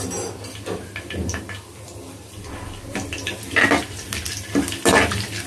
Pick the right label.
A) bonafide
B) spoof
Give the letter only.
B